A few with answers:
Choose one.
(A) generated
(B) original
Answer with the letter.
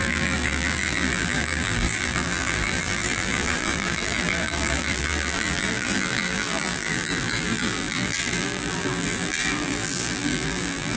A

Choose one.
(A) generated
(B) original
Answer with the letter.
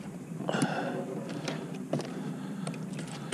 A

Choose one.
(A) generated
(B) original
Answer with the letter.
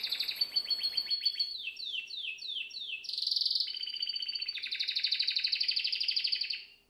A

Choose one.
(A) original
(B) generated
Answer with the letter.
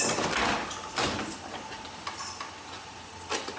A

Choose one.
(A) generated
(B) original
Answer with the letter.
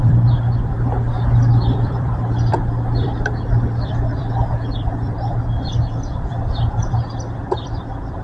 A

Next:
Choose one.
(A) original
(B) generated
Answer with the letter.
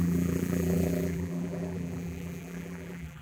B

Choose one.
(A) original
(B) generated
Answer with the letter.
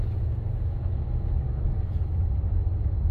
A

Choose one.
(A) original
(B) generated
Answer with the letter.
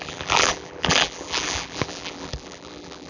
B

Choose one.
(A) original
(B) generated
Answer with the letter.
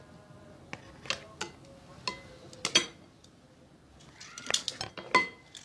A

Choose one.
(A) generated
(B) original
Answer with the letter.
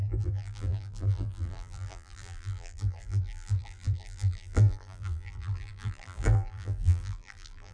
A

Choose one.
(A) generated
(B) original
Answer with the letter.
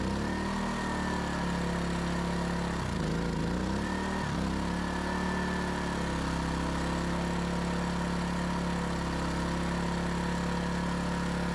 B